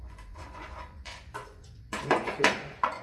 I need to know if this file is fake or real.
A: fake